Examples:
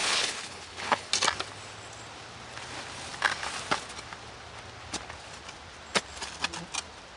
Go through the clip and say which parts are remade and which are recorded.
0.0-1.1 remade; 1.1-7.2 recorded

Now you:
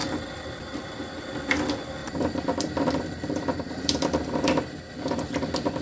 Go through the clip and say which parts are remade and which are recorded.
0.0-1.2 remade; 1.2-2.0 recorded; 2.0-4.7 remade; 4.7-5.8 recorded

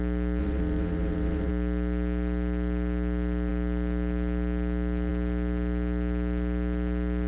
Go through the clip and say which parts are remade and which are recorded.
0.0-0.4 recorded; 0.4-1.5 remade; 1.5-7.3 recorded

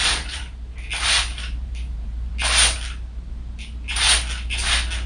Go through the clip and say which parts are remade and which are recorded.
0.0-0.7 remade; 0.7-1.3 recorded; 1.3-2.3 remade; 2.3-5.1 recorded